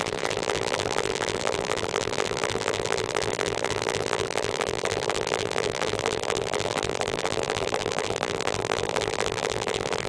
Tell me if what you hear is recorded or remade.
remade